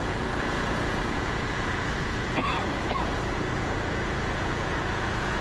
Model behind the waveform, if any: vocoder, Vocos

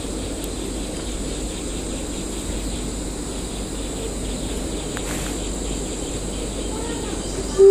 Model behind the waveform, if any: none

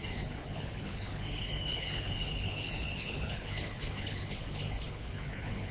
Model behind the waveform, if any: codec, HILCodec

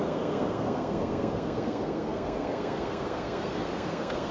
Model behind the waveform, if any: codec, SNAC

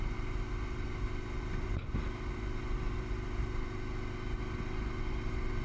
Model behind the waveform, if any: none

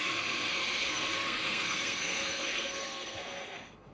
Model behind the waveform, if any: codec, SNAC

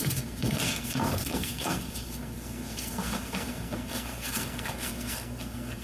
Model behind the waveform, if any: codec, SNAC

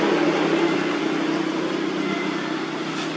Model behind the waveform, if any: none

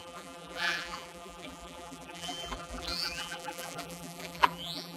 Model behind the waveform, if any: vocoder, BigVGAN v2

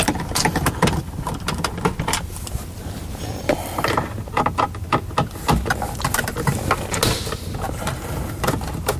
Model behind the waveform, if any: none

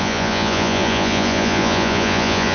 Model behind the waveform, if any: vocoder, Vocos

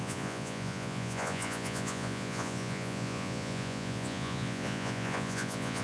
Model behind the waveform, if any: vocoder, Vocos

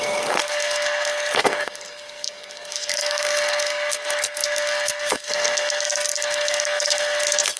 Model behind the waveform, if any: codec, SNAC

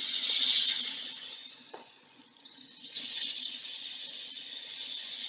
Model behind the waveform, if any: vocoder, Vocos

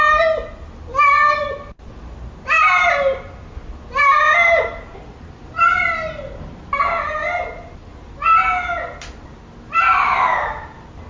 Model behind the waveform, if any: none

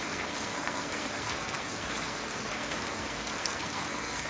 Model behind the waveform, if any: codec, SNAC